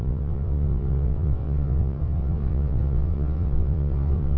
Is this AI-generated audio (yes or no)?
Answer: yes